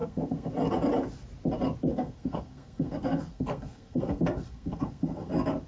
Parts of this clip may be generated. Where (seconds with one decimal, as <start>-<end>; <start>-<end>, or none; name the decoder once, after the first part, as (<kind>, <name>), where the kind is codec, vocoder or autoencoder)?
0.0-0.5 (codec, SNAC); 1.9-5.3